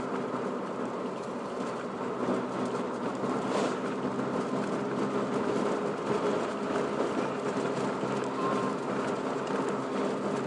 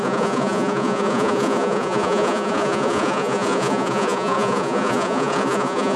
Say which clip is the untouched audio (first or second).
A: first